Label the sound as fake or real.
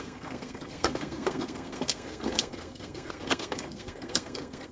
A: fake